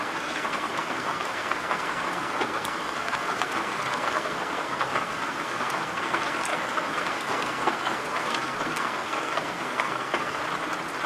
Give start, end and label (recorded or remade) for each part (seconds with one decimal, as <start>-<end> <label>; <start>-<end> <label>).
0.0-10.4 remade; 10.4-11.1 recorded